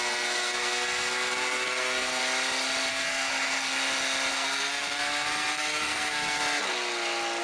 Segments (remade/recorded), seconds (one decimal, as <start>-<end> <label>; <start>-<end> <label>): 0.0-2.2 remade; 2.2-2.9 recorded; 2.9-3.7 remade; 3.7-4.3 recorded; 4.3-6.4 remade; 6.4-7.4 recorded